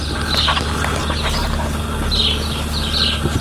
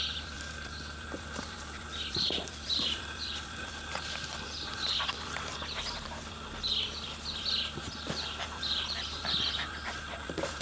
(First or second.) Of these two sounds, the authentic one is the first